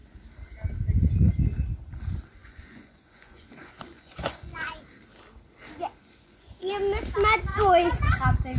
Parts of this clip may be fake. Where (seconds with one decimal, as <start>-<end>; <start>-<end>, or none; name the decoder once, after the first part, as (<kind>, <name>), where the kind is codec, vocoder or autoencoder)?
2.4-4.8 (vocoder, Vocos); 6.0-6.7; 7.5-8.2